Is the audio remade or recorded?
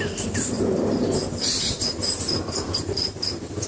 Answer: remade